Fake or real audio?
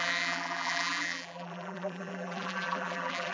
fake